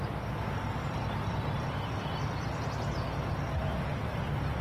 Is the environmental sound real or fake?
real